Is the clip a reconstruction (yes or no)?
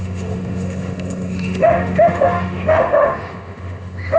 yes